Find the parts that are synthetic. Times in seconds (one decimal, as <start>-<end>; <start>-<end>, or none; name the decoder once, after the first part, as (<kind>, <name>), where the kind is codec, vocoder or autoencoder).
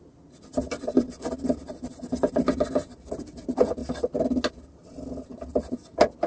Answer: none